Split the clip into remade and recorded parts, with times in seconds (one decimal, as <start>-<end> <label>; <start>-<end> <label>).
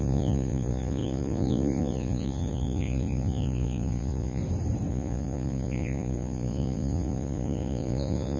0.0-4.4 remade; 4.4-4.9 recorded; 4.9-8.4 remade